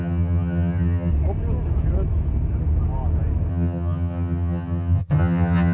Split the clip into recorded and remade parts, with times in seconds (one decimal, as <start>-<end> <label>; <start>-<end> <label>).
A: 0.0-1.1 remade; 1.1-3.5 recorded; 3.5-5.7 remade